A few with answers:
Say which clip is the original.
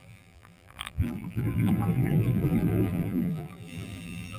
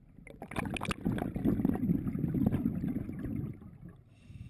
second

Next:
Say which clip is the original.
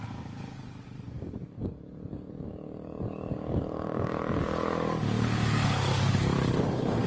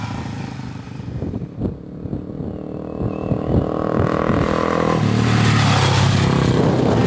second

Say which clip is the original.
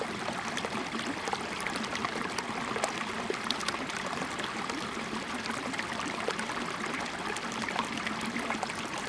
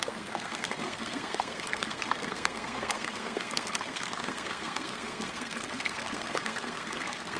first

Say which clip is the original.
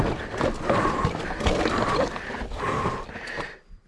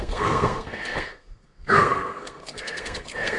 first